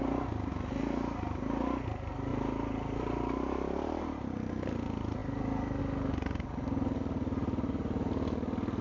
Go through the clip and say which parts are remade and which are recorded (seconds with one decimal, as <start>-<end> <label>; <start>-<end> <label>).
0.0-2.3 recorded; 2.3-4.5 remade; 4.5-8.8 recorded